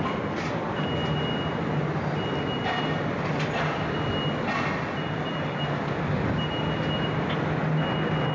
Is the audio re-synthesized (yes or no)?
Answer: no